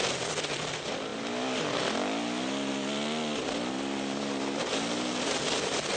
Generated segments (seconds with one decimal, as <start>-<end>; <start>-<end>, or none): none